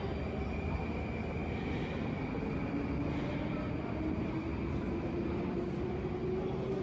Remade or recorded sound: recorded